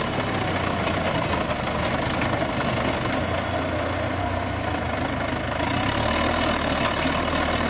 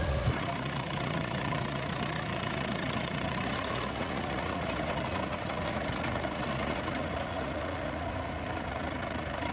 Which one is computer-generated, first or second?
second